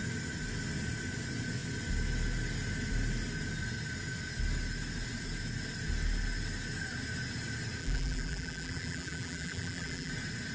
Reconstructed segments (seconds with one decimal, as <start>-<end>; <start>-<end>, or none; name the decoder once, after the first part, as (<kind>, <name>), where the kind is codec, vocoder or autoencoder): 7.8-10.1 (vocoder, BigVGAN v2)